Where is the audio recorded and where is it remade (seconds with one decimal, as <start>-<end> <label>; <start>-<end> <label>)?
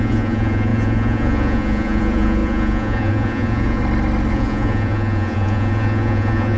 0.0-3.8 remade; 3.8-4.3 recorded; 4.3-6.6 remade